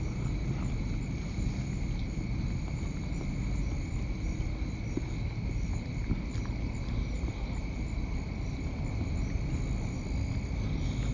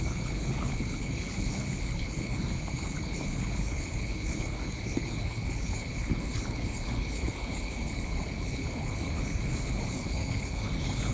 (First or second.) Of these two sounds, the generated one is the second